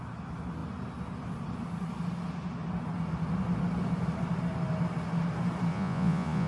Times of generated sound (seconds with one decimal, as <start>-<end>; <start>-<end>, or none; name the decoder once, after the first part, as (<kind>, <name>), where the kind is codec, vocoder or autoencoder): 5.7-6.5 (vocoder, Vocos)